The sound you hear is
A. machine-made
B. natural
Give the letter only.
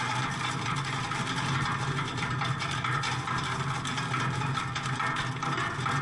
B